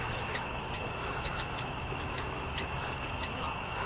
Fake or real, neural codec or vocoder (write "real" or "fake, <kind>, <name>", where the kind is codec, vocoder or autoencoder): fake, autoencoder, DAC-VAE